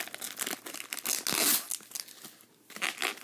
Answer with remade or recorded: recorded